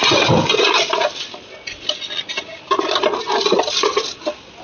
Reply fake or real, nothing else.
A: real